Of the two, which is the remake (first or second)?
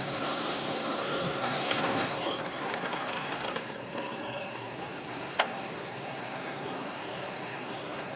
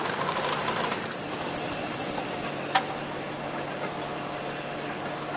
first